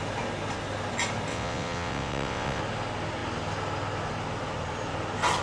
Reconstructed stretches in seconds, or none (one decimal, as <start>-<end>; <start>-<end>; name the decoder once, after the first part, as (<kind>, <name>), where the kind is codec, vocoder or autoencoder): 1.3-2.6 (vocoder, WaveNeXt)